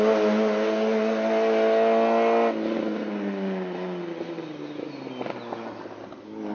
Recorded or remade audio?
recorded